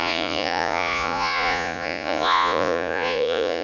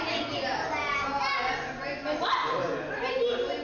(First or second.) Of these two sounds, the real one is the second